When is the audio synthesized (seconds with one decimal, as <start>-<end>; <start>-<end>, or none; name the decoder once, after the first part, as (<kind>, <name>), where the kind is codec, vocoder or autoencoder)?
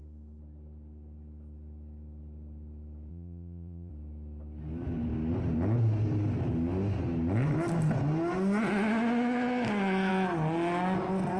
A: 3.1-3.9 (vocoder, Vocos)